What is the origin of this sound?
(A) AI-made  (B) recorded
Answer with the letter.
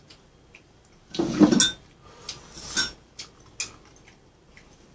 B